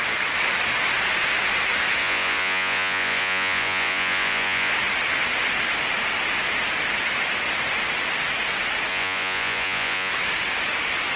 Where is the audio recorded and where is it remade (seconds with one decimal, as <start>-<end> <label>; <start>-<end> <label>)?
0.0-2.0 recorded; 2.0-4.7 remade; 4.7-8.9 recorded; 8.9-10.1 remade; 10.1-11.2 recorded